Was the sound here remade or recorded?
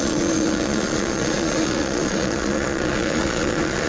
remade